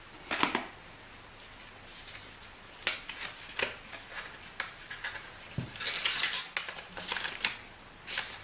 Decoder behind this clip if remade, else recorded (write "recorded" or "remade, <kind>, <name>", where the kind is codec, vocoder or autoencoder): recorded